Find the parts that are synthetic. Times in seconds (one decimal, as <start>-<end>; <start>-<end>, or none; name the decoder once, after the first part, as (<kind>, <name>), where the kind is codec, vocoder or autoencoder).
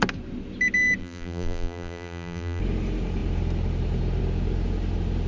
1.0-2.6 (vocoder, BigVGAN v2)